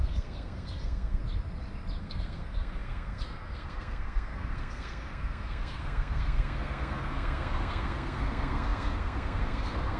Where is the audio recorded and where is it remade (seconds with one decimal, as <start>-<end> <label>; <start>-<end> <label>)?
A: 0.0-1.2 remade; 1.2-2.0 recorded; 2.0-10.0 remade